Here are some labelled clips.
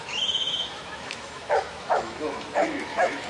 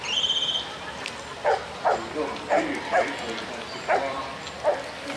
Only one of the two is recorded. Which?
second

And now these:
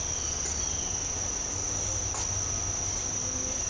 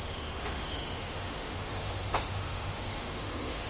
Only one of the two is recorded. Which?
first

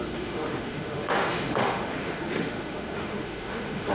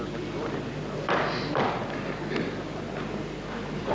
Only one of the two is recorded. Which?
second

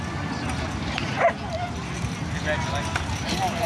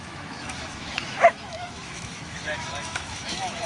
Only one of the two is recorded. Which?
first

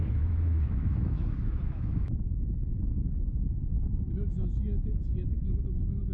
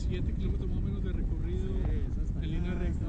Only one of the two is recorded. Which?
second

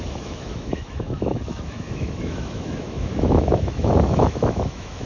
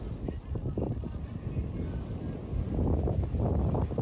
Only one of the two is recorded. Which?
second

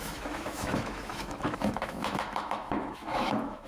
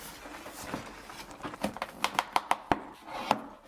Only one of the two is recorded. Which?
second